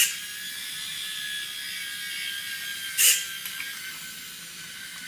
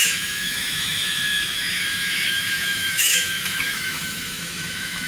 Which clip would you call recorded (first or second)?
first